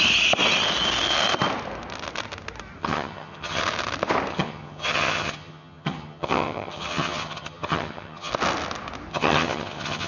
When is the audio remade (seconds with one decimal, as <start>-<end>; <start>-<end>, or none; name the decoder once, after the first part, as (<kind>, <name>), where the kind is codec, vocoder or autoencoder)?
2.8-3.6 (vocoder, HiFi-GAN); 4.3-8.3; 9.1-10.1